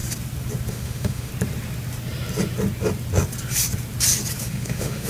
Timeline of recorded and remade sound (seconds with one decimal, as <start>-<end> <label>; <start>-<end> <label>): 0.0-0.7 recorded; 0.7-1.3 remade; 1.3-4.4 recorded; 4.4-5.1 remade